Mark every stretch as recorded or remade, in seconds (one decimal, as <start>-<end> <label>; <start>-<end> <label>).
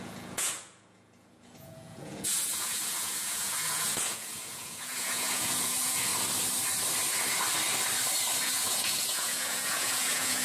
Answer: 0.0-6.1 remade; 6.1-8.4 recorded; 8.4-10.4 remade